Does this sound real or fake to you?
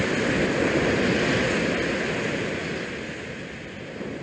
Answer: real